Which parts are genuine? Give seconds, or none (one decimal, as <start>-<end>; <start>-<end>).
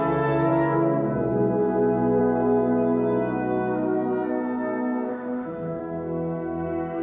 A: 0.0-5.1; 5.8-7.0